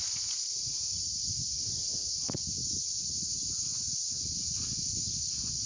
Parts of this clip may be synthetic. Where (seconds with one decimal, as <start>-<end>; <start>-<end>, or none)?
none